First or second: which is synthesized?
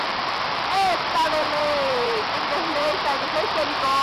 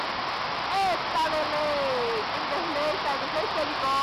first